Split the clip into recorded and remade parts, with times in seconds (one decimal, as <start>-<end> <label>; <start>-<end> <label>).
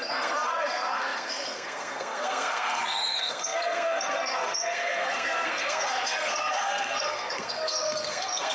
0.0-8.5 remade